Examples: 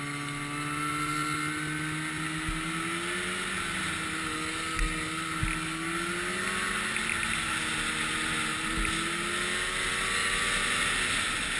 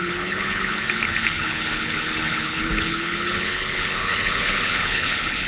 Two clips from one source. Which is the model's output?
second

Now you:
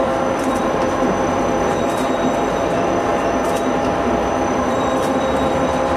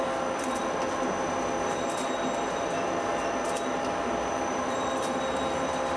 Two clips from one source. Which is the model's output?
first